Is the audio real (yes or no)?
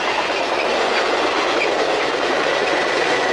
no